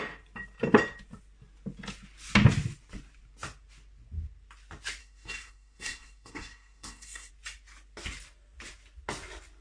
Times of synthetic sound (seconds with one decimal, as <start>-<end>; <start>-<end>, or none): 5.0-7.3